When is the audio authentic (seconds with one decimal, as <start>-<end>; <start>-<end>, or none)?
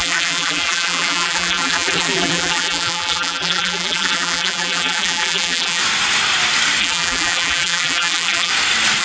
5.8-6.8; 8.5-9.0